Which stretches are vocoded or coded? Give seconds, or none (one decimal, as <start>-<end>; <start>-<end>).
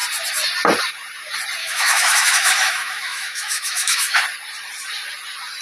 1.6-4.2